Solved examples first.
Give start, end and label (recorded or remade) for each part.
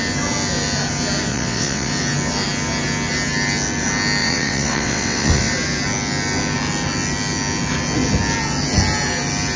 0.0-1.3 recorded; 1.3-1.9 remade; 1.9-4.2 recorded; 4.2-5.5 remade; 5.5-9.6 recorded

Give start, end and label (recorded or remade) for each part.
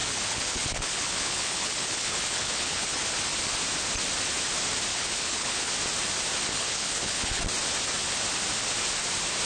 0.0-3.0 remade; 3.0-4.9 recorded; 4.9-5.7 remade; 5.7-6.5 recorded; 6.5-7.4 remade; 7.4-9.5 recorded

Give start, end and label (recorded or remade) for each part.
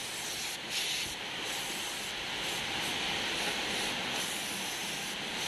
0.0-5.5 recorded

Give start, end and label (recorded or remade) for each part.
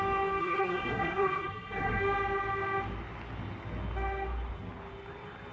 0.0-0.4 recorded; 0.4-2.0 remade; 2.0-5.5 recorded